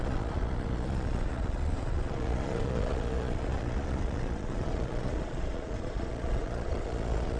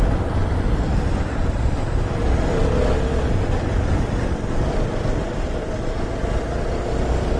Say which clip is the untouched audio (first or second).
second